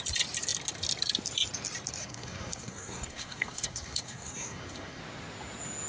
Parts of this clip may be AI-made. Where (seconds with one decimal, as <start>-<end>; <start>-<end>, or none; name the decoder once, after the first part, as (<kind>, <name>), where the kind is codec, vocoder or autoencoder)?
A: 2.0-5.0 (codec, SNAC)